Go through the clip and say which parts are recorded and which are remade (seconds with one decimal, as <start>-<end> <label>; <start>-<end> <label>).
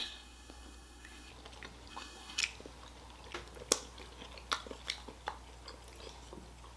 0.0-1.3 remade; 1.3-1.9 recorded; 1.9-2.4 remade; 2.4-6.8 recorded